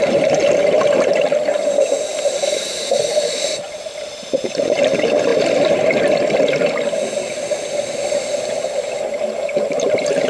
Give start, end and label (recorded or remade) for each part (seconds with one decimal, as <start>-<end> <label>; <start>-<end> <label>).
0.0-5.3 remade; 5.3-8.4 recorded; 8.4-10.3 remade